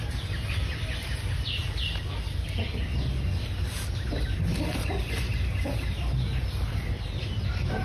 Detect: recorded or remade recorded